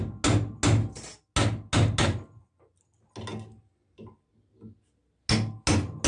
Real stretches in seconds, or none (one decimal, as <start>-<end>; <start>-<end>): 0.0-6.1

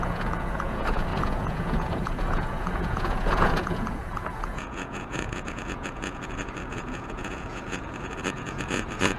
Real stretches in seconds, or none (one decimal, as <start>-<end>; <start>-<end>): none